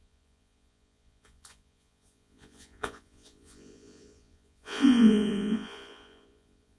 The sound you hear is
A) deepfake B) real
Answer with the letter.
A